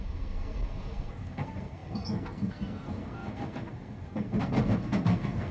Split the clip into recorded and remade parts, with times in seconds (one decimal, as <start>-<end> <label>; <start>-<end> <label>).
0.0-5.5 remade